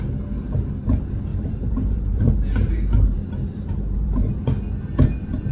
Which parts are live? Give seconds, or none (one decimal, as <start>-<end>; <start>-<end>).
0.0-1.3; 4.6-5.5